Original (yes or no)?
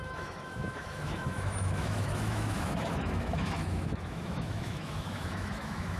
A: no